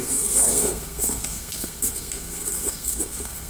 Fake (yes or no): yes